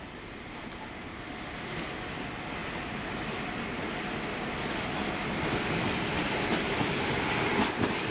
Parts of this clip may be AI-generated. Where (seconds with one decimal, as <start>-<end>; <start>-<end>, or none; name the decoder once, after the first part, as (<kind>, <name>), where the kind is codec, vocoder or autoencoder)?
none